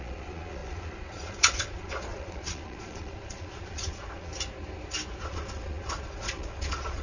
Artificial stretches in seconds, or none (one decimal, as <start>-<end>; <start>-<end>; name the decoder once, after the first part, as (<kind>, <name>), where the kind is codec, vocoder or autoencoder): 0.0-4.3 (vocoder, Vocos); 5.2-7.0